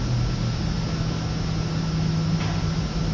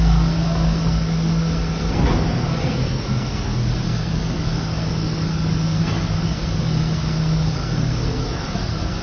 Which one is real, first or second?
first